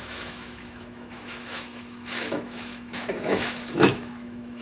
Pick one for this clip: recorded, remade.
remade